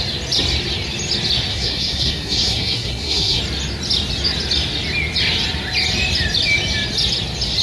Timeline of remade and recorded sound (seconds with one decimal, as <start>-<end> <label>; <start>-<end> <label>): 0.0-1.5 recorded; 1.5-3.4 remade; 3.4-7.6 recorded